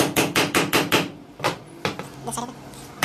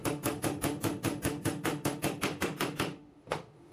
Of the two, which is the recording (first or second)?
first